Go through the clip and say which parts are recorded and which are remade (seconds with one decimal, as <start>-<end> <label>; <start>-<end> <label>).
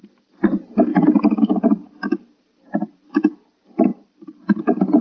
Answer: 0.0-0.9 remade; 0.9-3.1 recorded; 3.1-5.0 remade